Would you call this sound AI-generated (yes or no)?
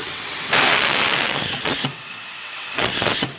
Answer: yes